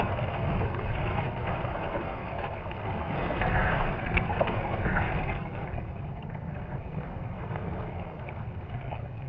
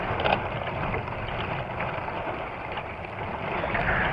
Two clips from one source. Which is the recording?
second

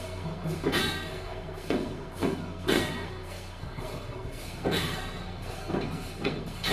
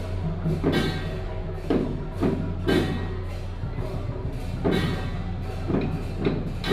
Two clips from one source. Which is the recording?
second